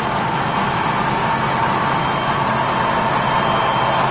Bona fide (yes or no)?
yes